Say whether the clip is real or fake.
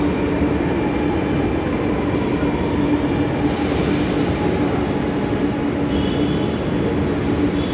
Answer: real